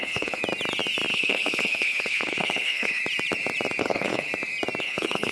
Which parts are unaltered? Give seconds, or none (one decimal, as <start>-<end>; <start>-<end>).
0.4-1.1; 3.0-3.8; 4.3-4.8